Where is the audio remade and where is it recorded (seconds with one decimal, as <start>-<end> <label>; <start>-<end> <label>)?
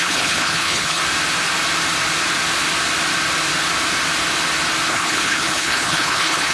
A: 0.0-1.0 remade; 1.0-4.9 recorded; 4.9-6.5 remade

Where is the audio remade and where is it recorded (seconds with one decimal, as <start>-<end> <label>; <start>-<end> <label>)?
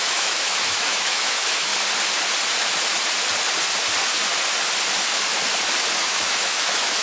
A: 0.0-1.7 remade; 1.7-5.9 recorded; 5.9-7.0 remade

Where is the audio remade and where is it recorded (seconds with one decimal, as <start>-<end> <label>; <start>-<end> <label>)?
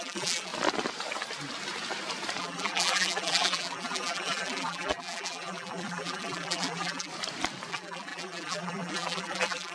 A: 0.0-0.5 remade; 0.5-2.4 recorded; 2.4-7.1 remade; 7.1-7.7 recorded; 7.7-9.7 remade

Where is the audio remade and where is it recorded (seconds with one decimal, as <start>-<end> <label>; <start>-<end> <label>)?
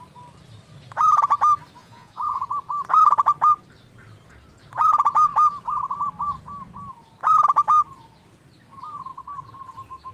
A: 0.0-1.8 recorded; 1.8-2.4 remade; 2.4-10.1 recorded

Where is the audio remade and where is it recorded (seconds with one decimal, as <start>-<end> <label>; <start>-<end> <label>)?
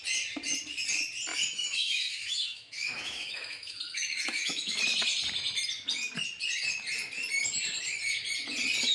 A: 0.0-1.3 recorded; 1.3-4.8 remade; 4.8-8.9 recorded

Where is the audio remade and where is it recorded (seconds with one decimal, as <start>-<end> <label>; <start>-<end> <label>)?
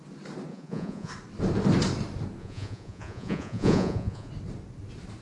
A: 0.0-0.5 recorded; 0.5-1.1 remade; 1.1-2.4 recorded; 2.4-4.3 remade; 4.3-5.2 recorded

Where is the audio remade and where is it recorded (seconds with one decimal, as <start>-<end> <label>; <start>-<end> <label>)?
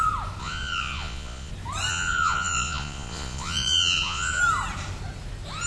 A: 0.0-0.4 recorded; 0.4-1.5 remade; 1.5-1.9 recorded; 1.9-4.4 remade; 4.4-5.7 recorded